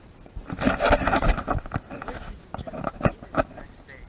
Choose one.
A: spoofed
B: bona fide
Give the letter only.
B